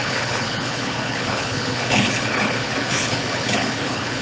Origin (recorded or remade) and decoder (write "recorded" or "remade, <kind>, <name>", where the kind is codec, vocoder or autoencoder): remade, codec, HILCodec